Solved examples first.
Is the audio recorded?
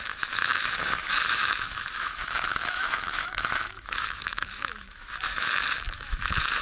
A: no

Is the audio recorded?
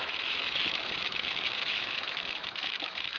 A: no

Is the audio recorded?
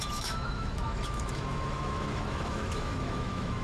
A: no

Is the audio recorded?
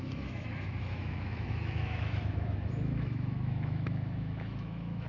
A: no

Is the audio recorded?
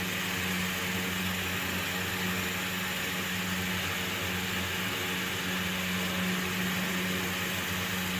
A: yes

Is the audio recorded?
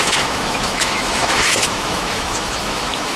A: no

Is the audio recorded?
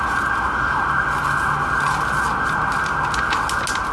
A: yes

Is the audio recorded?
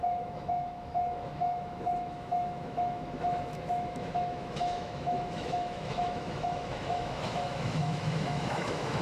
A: no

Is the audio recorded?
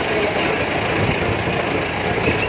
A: yes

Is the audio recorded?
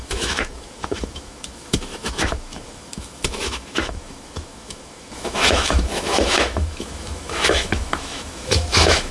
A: no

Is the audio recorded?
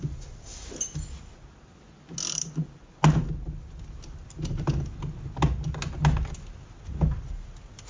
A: yes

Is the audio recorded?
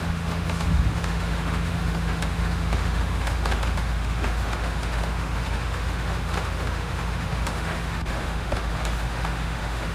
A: no